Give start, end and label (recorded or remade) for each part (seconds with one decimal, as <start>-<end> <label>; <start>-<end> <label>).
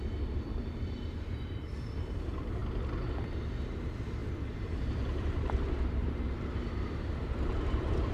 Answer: 0.0-2.6 remade; 2.6-3.6 recorded; 3.6-8.1 remade